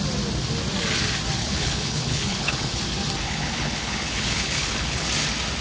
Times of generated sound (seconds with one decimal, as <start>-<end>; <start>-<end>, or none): 1.4-2.8; 3.2-5.1